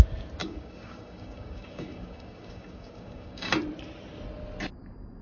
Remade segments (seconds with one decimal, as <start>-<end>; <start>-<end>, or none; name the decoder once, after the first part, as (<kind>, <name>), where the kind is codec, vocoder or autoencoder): 0.4-3.5 (codec, DAC)